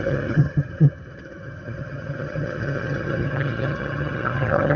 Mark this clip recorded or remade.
remade